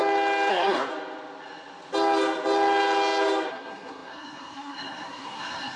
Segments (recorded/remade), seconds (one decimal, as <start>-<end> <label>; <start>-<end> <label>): 0.0-0.5 recorded; 0.5-0.9 remade; 0.9-3.5 recorded; 3.5-5.8 remade